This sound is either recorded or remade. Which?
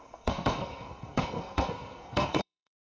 remade